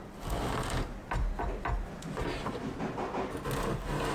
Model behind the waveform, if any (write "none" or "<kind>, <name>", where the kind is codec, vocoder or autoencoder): none